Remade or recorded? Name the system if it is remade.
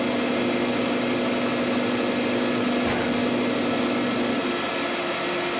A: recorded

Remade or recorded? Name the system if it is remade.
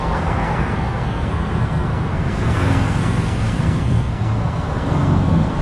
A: remade, codec, SNAC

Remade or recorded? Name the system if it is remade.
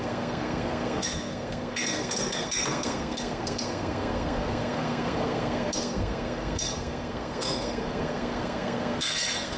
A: remade, codec, SNAC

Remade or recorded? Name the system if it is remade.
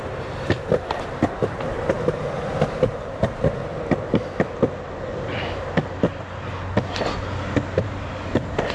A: recorded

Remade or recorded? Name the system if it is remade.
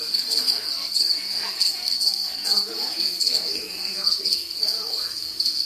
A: remade, codec, SNAC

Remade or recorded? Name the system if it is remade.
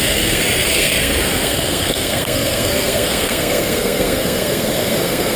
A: remade, codec, SNAC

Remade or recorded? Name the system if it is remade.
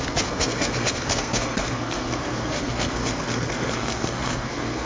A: remade, codec, SNAC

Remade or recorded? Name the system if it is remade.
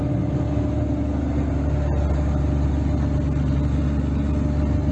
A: recorded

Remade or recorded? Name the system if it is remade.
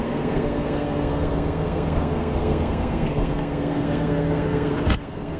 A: remade, codec, SNAC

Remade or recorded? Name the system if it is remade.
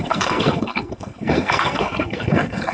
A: remade, codec, SNAC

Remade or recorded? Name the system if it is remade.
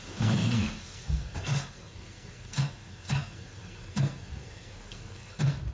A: remade, codec, SNAC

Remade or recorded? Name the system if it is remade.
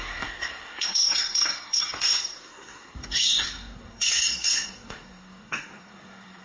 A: remade, codec, SNAC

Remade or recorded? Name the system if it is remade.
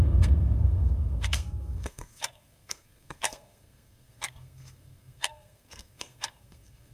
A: remade, codec, SNAC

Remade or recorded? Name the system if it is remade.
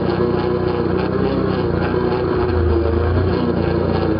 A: recorded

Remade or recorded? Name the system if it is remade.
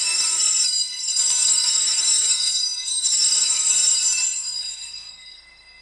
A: remade, codec, SNAC